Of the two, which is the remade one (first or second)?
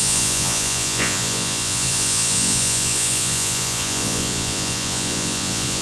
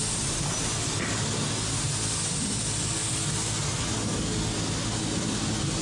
first